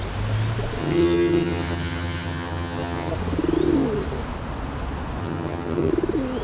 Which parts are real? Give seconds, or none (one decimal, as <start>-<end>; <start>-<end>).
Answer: 0.0-0.8; 3.1-5.2; 5.9-6.4